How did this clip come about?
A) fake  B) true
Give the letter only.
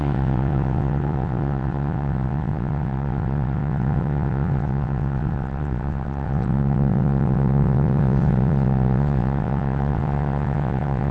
A